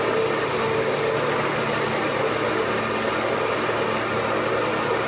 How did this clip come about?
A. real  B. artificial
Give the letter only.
A